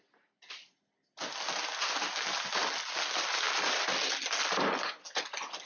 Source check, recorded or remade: recorded